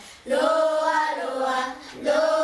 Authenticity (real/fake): real